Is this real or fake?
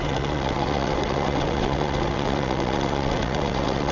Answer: fake